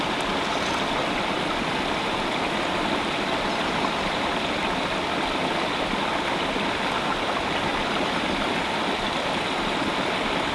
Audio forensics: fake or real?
real